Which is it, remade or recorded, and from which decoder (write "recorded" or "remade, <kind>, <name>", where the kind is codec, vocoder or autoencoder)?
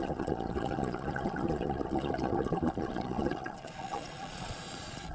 remade, vocoder, Vocos